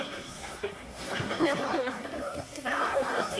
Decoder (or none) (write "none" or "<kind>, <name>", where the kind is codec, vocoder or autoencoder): codec, SNAC